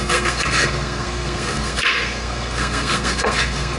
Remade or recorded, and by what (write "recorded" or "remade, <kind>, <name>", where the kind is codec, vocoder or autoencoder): remade, codec, SNAC